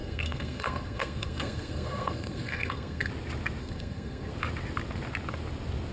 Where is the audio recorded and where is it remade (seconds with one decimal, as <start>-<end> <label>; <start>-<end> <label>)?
0.0-3.1 remade; 3.1-3.6 recorded; 3.6-4.3 remade; 4.3-5.9 recorded